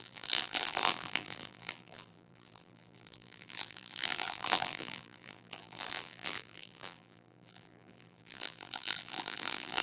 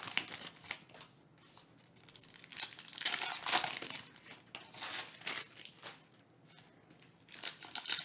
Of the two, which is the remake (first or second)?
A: first